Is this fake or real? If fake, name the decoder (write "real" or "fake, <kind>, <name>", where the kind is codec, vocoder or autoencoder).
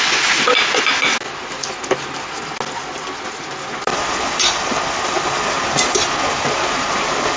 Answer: real